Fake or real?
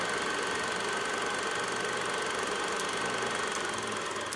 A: real